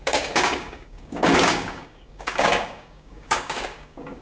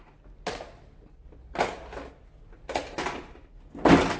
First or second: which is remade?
first